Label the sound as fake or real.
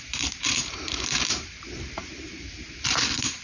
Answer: fake